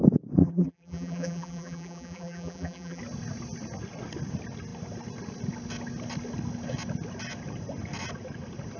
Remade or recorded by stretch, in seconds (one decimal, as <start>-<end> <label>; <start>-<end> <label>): 0.0-0.4 recorded; 0.4-3.0 remade; 3.0-8.8 recorded